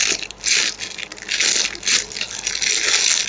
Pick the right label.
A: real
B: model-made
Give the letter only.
A